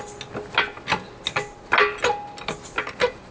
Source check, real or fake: real